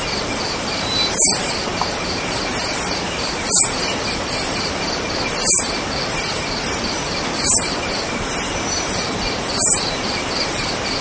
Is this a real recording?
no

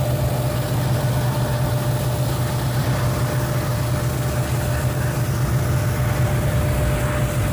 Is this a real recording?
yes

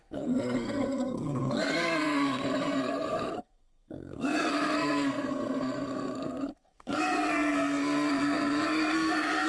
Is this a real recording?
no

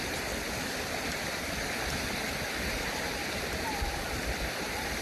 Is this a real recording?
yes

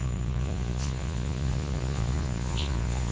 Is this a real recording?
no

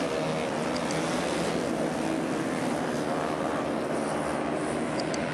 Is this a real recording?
yes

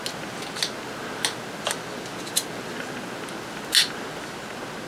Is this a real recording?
yes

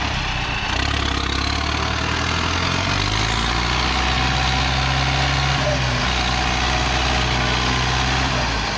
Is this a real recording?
yes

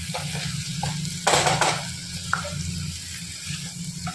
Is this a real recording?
yes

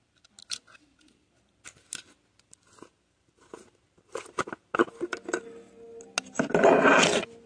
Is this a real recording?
yes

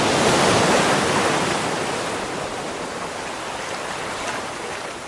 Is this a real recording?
yes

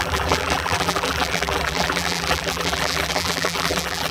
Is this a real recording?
no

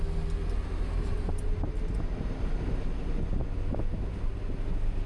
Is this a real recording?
yes